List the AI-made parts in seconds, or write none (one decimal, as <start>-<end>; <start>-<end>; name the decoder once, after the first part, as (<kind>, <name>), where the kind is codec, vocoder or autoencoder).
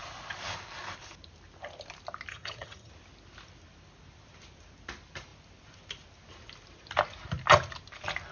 2.3-2.9 (vocoder, HiFi-GAN)